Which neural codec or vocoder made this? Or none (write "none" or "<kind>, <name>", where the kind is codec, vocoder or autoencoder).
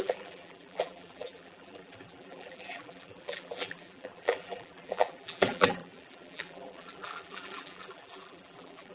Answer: vocoder, BigVGAN v2